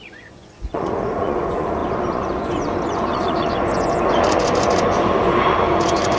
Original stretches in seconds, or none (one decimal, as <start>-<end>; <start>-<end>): none